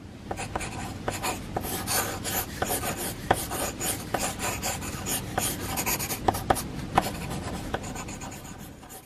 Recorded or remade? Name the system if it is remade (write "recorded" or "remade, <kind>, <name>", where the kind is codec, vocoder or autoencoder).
recorded